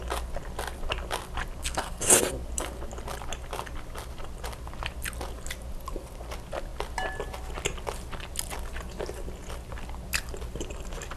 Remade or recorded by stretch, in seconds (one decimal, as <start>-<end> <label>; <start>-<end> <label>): 0.0-1.6 recorded; 1.6-2.2 remade; 2.2-11.2 recorded